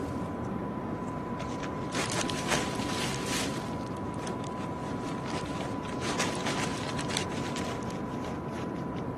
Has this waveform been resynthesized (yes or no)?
yes